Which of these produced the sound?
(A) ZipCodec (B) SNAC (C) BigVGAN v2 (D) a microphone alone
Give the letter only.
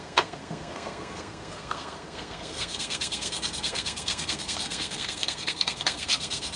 B